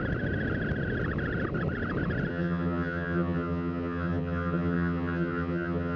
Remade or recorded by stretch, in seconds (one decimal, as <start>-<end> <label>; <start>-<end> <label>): 0.0-2.3 recorded; 2.3-6.0 remade